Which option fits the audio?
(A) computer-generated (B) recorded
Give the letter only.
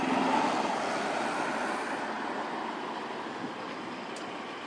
B